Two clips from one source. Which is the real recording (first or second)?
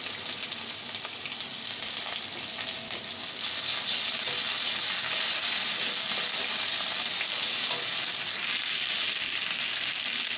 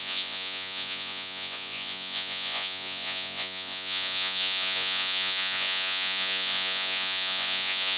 first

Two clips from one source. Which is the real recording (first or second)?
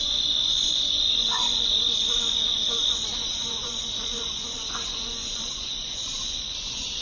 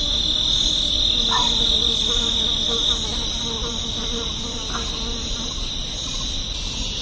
second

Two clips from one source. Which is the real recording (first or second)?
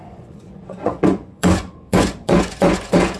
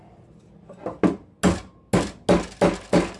second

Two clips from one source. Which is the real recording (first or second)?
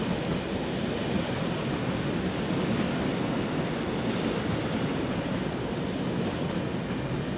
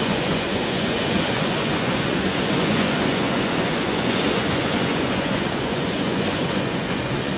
first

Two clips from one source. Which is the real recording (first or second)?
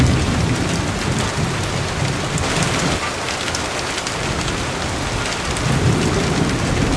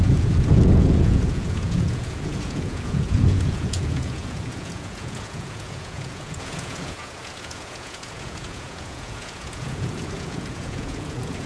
first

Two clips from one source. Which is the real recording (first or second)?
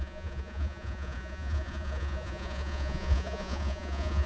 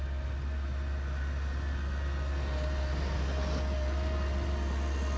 second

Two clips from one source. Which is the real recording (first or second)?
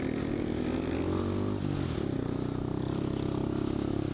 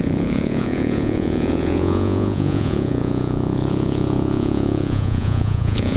first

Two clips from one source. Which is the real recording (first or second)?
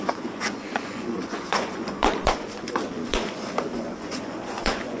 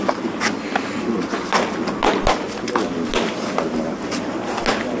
second